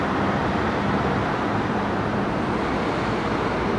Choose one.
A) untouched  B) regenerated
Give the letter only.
A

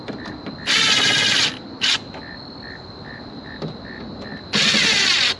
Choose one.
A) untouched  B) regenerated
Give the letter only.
A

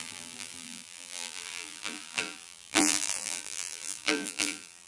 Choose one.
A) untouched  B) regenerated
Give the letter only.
B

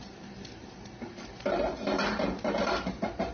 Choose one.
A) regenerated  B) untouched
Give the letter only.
A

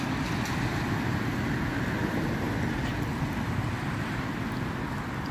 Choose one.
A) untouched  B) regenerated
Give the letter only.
A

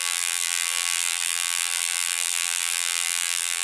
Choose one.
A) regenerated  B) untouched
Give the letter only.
A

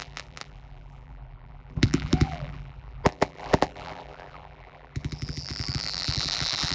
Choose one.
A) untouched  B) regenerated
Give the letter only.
B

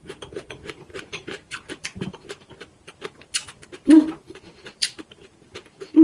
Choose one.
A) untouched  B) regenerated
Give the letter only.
B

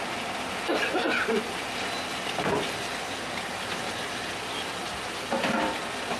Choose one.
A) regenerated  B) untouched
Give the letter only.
A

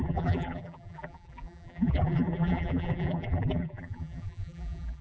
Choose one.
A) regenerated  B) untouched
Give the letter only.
A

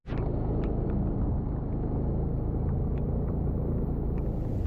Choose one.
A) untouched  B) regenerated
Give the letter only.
A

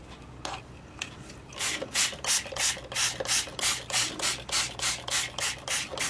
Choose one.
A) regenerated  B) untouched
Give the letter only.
B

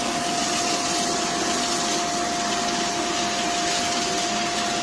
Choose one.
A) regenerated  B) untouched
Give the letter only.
B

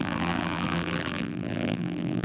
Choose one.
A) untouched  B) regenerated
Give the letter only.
B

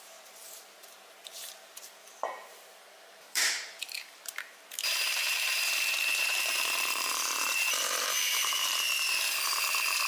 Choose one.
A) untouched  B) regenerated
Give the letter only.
B